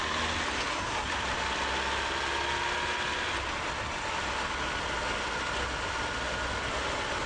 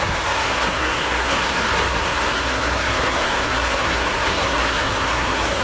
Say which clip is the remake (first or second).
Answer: second